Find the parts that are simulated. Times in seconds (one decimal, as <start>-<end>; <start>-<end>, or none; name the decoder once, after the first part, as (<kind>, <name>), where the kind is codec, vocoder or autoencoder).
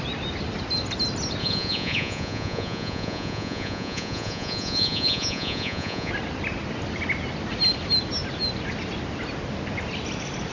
1.4-6.1 (vocoder, Vocos)